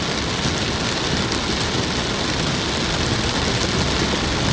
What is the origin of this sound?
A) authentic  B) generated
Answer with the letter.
A